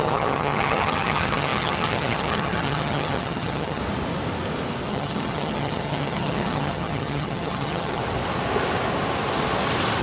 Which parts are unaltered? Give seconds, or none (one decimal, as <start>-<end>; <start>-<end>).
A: 3.8-4.9; 8.0-10.0